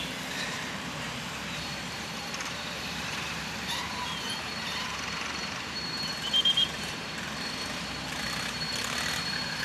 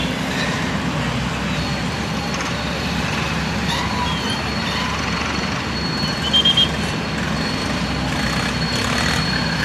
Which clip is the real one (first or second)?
second